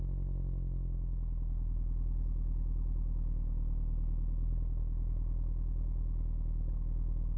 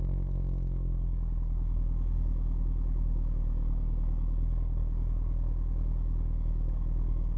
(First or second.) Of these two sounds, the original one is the first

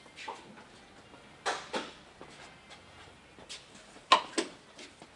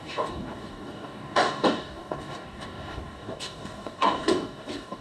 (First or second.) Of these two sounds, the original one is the first